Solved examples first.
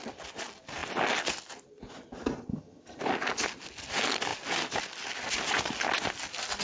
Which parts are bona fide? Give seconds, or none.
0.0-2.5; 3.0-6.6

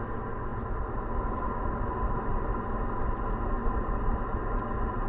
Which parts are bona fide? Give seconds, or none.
0.0-5.1

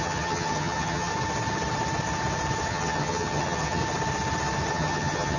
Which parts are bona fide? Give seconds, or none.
1.1-2.7; 3.8-4.7

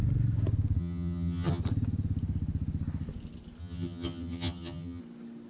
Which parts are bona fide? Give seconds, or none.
0.0-0.8; 1.6-3.6; 5.0-5.5

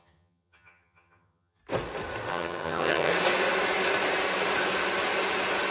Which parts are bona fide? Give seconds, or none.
1.6-2.3; 3.1-5.7

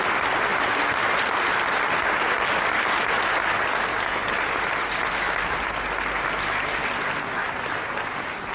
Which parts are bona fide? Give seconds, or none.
0.0-8.5

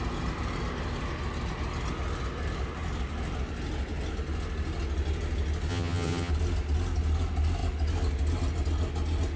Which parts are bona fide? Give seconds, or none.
0.0-5.7; 6.3-9.4

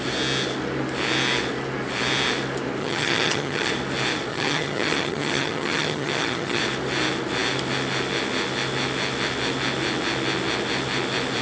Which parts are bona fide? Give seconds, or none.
0.0-2.8; 3.7-4.3; 6.6-11.4